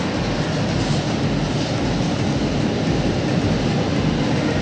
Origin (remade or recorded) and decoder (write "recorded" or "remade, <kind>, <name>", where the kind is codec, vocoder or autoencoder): recorded